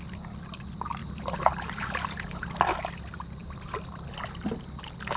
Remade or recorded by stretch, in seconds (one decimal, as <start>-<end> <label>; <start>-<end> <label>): 0.0-1.0 recorded; 1.0-2.6 remade; 2.6-5.2 recorded